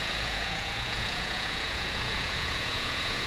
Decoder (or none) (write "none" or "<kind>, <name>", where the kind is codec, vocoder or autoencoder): vocoder, Vocos